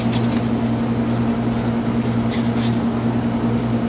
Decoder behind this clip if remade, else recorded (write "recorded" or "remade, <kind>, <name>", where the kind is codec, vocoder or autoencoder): recorded